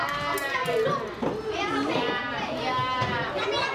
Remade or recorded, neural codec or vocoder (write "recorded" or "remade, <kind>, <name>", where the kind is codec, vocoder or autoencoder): recorded